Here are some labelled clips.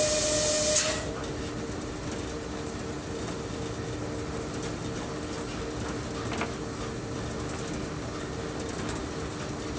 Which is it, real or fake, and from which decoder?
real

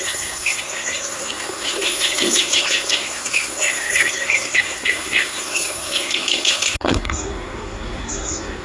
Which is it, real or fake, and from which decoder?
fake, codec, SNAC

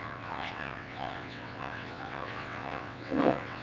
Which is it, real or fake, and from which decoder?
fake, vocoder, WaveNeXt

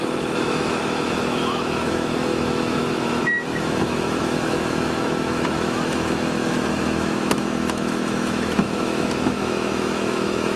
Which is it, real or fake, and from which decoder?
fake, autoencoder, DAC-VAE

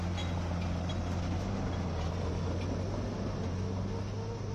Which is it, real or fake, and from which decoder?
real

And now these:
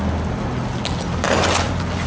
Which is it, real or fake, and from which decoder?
real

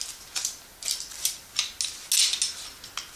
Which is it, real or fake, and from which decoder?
real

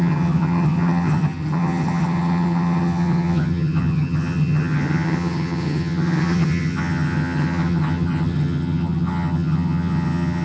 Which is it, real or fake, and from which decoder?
fake, vocoder, HiFi-GAN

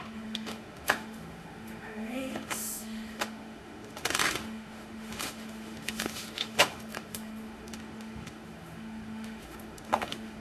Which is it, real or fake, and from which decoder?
fake, autoencoder, DAC-VAE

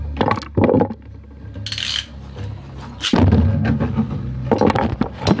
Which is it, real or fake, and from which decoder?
real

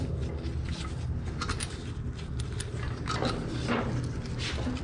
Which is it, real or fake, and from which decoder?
real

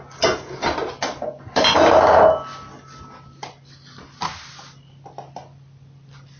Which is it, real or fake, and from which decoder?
real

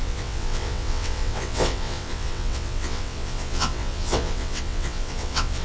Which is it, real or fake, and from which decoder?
fake, vocoder, WaveNeXt